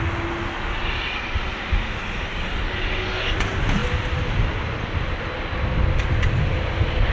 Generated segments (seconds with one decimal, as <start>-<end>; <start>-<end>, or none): none